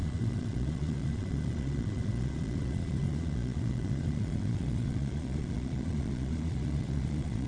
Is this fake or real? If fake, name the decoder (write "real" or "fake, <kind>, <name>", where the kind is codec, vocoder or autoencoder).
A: fake, vocoder, Vocos